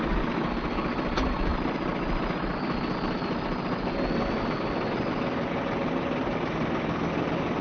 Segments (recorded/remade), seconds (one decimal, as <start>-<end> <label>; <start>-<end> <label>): 0.0-7.6 recorded